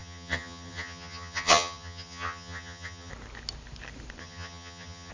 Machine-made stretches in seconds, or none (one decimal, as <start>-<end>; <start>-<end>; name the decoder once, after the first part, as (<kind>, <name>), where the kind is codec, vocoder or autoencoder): 0.0-3.1 (vocoder, HiFi-GAN); 4.2-5.1